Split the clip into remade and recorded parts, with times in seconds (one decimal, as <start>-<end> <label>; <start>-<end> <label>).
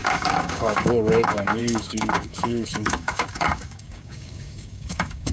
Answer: 0.0-5.3 remade